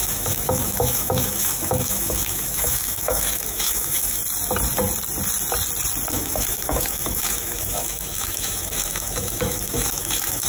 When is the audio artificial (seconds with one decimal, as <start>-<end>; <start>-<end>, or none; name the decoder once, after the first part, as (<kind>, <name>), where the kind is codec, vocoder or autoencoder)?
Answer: 0.0-4.2 (autoencoder, DAC-VAE); 6.1-10.5